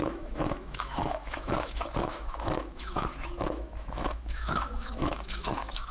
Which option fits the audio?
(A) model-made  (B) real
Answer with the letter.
A